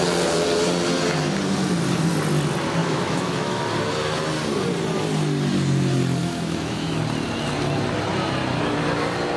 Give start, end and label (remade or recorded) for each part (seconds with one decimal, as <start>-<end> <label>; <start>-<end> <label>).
0.0-2.8 recorded; 2.8-3.6 remade; 3.6-6.2 recorded; 6.2-7.0 remade; 7.0-9.4 recorded